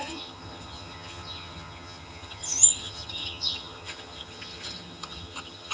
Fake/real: fake